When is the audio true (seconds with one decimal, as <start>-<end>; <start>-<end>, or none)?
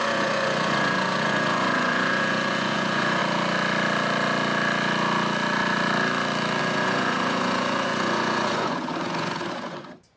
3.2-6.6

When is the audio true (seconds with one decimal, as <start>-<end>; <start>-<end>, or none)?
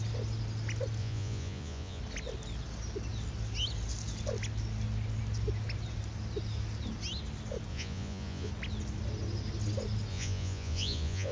0.0-1.0; 2.0-7.7; 8.5-10.1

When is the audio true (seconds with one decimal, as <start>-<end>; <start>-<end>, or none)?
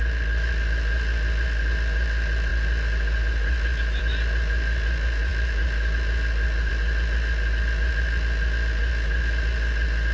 0.0-10.1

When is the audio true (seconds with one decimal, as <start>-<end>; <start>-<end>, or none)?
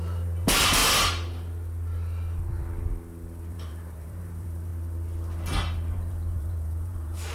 0.8-3.5; 4.7-5.9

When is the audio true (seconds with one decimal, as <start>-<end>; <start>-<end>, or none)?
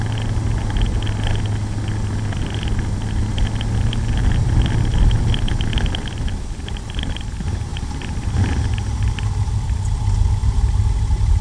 0.0-7.7; 8.3-11.4